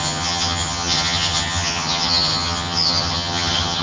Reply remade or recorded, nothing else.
remade